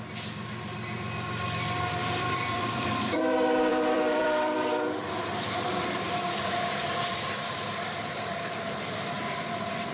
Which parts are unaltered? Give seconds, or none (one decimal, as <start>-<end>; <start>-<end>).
0.0-2.0; 3.2-3.7; 8.5-9.9